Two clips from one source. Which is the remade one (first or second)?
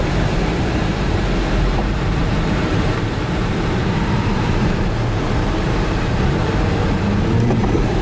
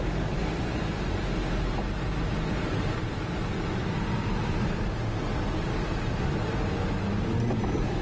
first